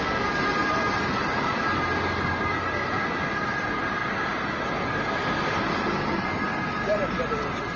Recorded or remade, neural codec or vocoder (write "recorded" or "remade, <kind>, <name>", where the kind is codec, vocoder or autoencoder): recorded